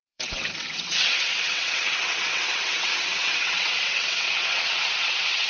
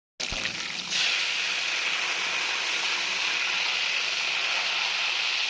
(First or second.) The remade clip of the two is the first